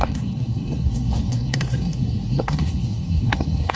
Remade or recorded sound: remade